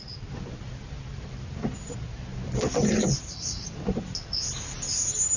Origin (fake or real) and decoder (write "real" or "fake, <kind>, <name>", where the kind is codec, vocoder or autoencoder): real